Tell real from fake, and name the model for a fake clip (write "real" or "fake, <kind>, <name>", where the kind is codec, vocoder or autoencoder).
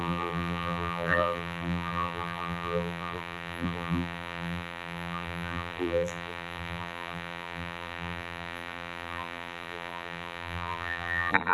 fake, vocoder, BigVGAN v2